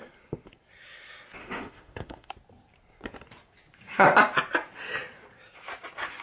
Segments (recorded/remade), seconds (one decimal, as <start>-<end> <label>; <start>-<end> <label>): 0.0-1.4 recorded; 1.4-2.3 remade; 2.3-6.2 recorded